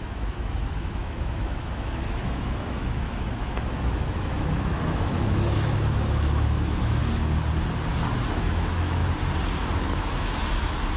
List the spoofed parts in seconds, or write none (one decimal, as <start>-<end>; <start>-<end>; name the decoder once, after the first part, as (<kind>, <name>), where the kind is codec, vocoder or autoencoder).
0.0-7.0 (autoencoder, DAC-VAE); 8.3-9.0; 9.8-11.0

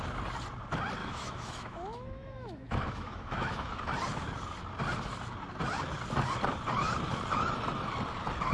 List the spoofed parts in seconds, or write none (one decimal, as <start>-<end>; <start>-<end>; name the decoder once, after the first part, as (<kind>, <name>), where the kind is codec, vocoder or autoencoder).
1.0-3.8 (autoencoder, DAC-VAE)

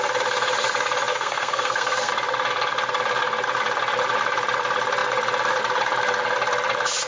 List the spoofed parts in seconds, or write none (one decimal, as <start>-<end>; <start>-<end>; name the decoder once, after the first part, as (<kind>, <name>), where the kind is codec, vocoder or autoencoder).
1.1-2.1 (codec, SNAC)

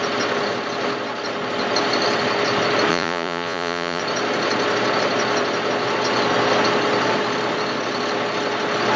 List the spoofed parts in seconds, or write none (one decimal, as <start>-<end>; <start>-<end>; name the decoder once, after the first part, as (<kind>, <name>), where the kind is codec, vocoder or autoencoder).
2.9-4.0 (vocoder, Vocos)

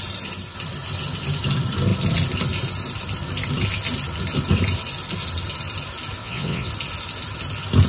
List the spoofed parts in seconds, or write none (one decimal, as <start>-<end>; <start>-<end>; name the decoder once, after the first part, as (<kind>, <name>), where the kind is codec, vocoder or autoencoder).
6.2-6.7 (vocoder, WaveNeXt)